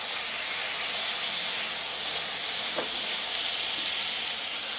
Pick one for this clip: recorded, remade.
recorded